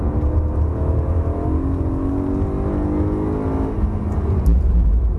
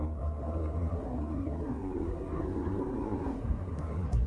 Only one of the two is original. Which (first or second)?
first